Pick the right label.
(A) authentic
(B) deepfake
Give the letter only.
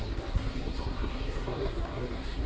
B